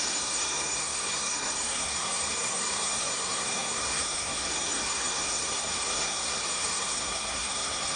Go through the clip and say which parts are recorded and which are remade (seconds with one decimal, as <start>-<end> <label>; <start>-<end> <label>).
0.0-8.0 remade